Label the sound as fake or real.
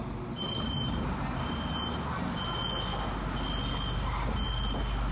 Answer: real